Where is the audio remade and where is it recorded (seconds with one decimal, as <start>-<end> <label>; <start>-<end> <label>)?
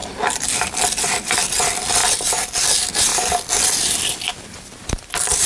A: 0.0-1.0 recorded; 1.0-5.5 remade